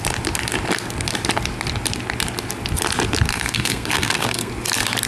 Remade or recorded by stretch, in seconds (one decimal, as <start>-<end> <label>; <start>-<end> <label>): 0.0-3.3 recorded; 3.3-4.5 remade; 4.5-5.1 recorded